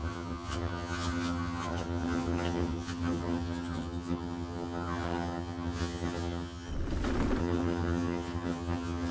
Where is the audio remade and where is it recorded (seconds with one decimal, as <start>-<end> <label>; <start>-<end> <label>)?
0.0-6.7 remade; 6.7-7.4 recorded; 7.4-9.1 remade